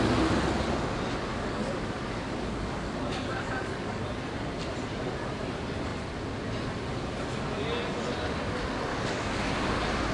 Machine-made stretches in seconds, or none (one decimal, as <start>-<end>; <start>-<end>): 1.3-4.0; 8.9-9.5